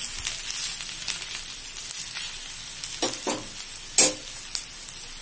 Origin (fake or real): real